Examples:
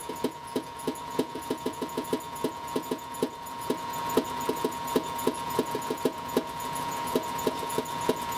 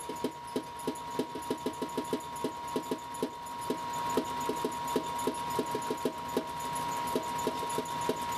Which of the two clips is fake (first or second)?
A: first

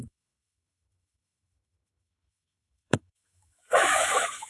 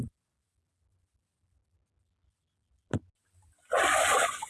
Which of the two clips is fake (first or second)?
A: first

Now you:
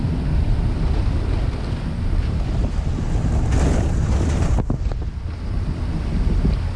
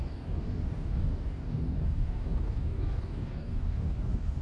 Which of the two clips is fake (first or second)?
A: second